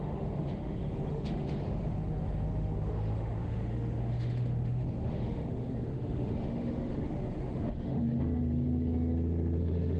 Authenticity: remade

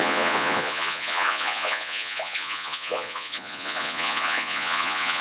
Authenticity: remade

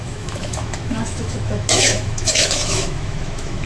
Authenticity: remade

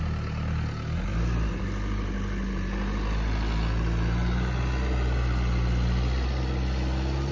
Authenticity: recorded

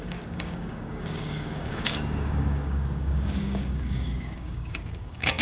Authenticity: remade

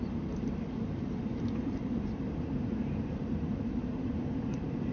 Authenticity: remade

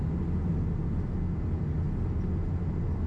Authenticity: recorded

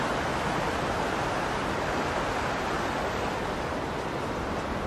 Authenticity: recorded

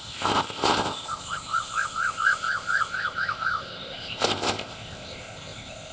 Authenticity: remade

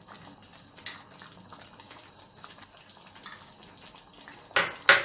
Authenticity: recorded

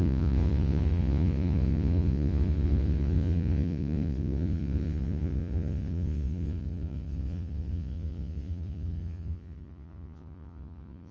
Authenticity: remade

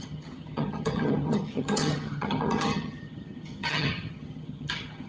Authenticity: remade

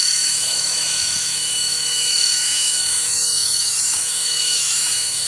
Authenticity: remade